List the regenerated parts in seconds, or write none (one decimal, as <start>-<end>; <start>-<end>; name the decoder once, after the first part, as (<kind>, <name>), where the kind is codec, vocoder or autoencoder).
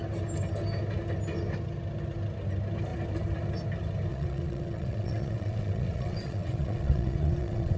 4.1-7.8 (vocoder, WaveNeXt)